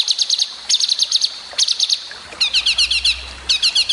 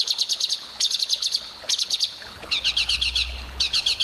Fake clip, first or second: second